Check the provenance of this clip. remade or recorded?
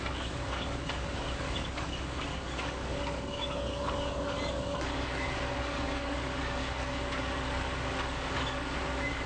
remade